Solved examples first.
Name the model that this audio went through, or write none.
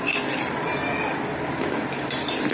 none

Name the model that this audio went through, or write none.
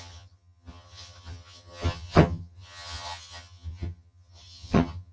vocoder, HiFi-GAN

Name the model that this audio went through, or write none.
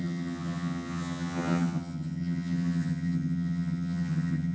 vocoder, HiFi-GAN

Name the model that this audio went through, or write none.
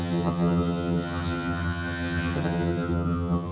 vocoder, HiFi-GAN